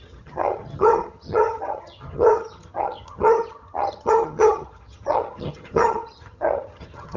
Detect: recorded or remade remade